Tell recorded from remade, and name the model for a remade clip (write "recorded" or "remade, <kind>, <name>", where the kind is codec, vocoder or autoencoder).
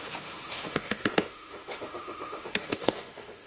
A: remade, autoencoder, DAC-VAE